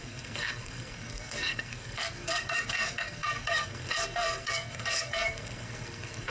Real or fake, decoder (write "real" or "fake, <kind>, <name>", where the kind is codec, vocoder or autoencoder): fake, codec, SNAC